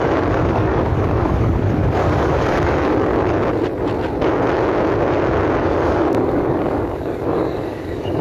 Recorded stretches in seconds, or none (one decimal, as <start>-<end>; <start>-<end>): 3.1-5.6